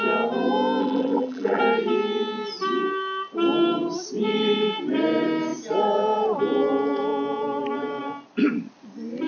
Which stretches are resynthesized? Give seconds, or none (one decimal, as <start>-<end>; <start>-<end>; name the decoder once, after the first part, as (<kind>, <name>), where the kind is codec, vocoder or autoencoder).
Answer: 0.8-1.6 (vocoder, BigVGAN v2)